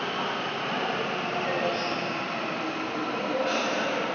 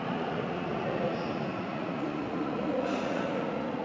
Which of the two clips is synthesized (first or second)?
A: second